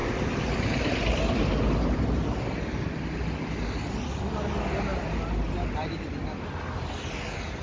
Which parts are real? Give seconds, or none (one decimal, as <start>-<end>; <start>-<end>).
0.0-7.6